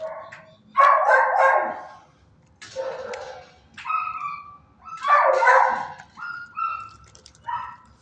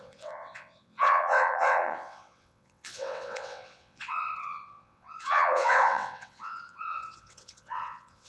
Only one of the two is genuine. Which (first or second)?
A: first